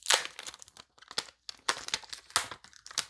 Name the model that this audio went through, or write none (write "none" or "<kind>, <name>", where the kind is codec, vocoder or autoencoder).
none